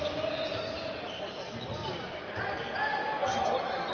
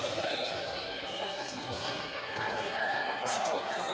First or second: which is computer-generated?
second